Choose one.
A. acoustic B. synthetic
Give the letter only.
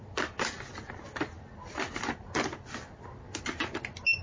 A